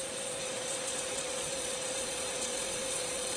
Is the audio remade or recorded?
remade